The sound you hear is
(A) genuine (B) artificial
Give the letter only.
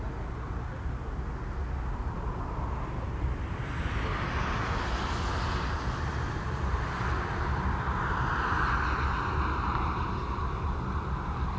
A